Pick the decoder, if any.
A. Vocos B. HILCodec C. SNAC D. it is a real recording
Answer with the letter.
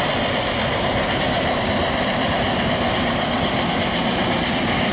D